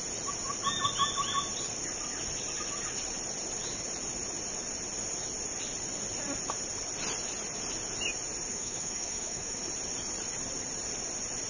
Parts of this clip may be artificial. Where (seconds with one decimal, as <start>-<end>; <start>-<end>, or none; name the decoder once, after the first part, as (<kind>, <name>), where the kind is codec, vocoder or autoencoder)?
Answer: 8.5-9.6 (autoencoder, DAC-VAE)